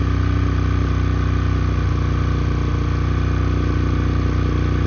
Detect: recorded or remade recorded